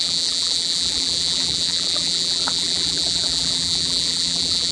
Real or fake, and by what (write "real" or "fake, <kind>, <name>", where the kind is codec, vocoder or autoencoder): fake, vocoder, BigVGAN v2